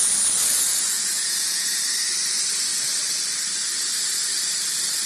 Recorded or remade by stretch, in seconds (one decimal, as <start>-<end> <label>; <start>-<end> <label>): 0.0-0.7 recorded; 0.7-1.8 remade; 1.8-5.1 recorded